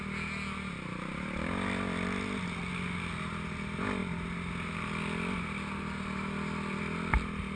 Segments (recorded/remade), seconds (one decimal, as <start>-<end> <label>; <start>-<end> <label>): 0.0-7.6 recorded